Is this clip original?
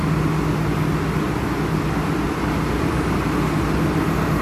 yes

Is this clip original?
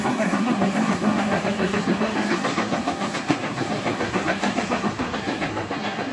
no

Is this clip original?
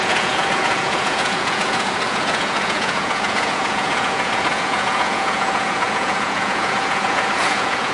no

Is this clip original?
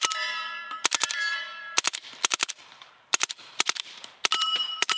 no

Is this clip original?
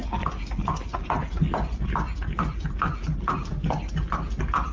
yes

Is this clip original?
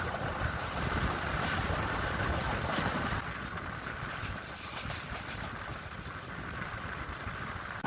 no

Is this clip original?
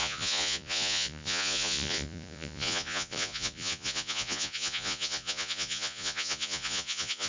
no